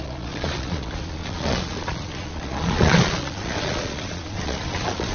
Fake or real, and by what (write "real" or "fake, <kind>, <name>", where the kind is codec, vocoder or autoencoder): fake, vocoder, Vocos